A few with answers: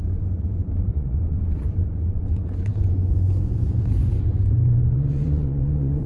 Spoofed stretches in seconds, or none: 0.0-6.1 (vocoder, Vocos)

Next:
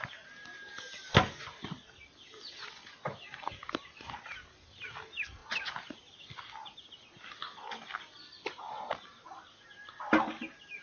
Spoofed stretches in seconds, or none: none

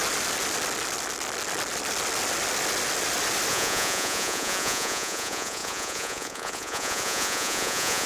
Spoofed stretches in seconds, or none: 3.5-8.1 (vocoder, Vocos)

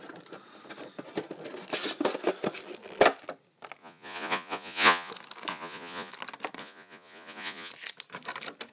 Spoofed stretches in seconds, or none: 3.8-5.1 (vocoder, Vocos); 5.5-6.1; 6.6-7.7

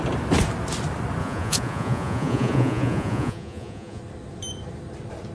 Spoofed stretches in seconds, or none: 1.2-4.0 (vocoder, Vocos)

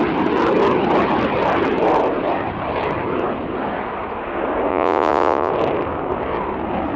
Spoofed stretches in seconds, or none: 4.7-5.5 (vocoder, Vocos)